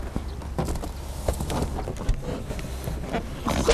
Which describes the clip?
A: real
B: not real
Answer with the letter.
A